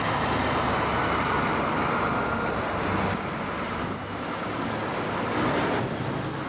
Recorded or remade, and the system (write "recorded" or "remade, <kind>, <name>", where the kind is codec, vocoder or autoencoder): recorded